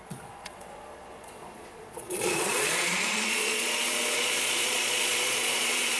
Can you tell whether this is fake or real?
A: fake